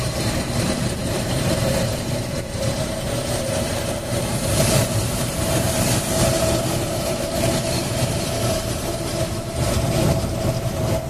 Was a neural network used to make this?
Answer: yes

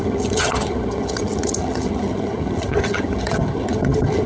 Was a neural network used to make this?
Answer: yes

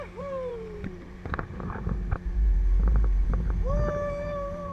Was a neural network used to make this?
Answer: yes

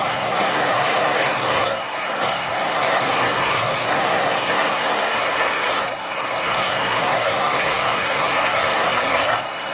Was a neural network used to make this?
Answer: yes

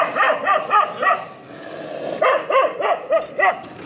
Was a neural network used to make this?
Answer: no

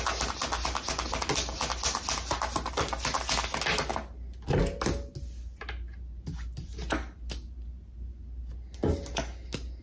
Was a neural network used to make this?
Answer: no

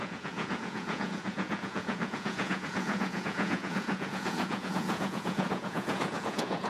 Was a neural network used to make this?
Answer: yes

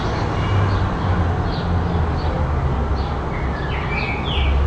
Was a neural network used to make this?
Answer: no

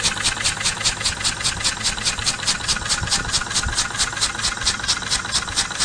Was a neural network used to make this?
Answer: no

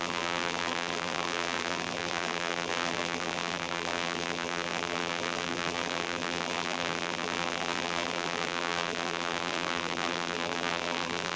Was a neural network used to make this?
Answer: yes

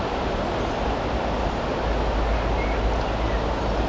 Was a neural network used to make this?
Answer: no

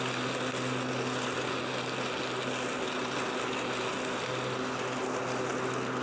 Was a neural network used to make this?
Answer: no